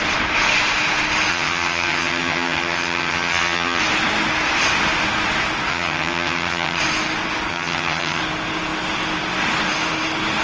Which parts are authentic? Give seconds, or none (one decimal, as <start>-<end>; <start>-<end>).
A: 0.0-1.3; 3.8-5.7; 6.8-7.5; 8.2-10.4